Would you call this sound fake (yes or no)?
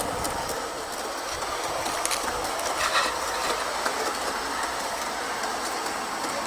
no